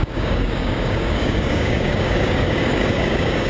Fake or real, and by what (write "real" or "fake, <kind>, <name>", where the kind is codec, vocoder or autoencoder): fake, codec, DAC